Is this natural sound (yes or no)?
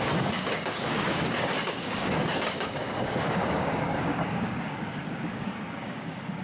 no